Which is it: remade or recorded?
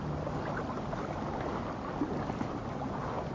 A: recorded